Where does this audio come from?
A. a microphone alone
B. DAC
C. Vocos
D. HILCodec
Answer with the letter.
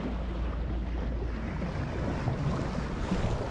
A